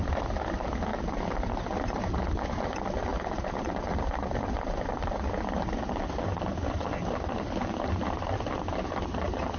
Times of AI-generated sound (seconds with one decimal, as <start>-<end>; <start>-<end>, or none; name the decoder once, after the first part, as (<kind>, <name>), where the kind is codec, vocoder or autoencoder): none